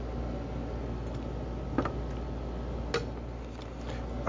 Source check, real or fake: real